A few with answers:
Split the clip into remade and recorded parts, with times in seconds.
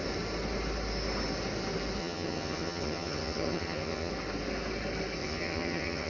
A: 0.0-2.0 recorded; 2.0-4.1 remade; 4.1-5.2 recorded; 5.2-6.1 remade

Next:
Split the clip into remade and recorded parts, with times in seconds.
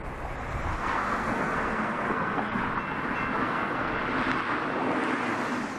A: 0.0-0.7 recorded; 0.7-2.6 remade; 2.6-3.4 recorded; 3.4-3.9 remade; 3.9-5.8 recorded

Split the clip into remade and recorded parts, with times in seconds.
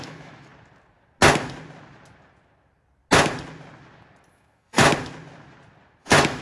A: 0.0-0.5 remade; 0.5-4.3 recorded; 4.3-4.8 remade; 4.8-6.0 recorded; 6.0-6.4 remade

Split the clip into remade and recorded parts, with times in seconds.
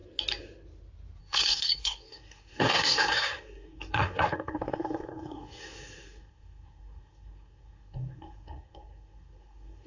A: 0.0-1.2 recorded; 1.2-9.9 remade